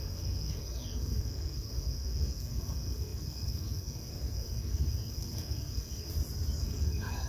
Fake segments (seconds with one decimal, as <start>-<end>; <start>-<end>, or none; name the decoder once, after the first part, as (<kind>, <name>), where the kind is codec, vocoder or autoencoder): 0.0-6.1 (codec, SNAC); 6.6-7.3